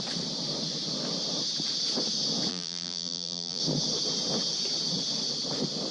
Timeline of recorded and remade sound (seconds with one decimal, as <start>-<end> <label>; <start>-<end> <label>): 0.0-2.5 recorded; 2.5-3.6 remade; 3.6-5.9 recorded

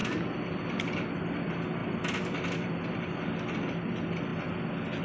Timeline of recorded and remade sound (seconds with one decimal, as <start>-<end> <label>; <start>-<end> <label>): 0.0-5.0 recorded